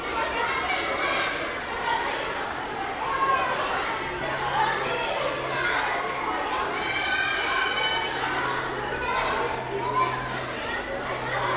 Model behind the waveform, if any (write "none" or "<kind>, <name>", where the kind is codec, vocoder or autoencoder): none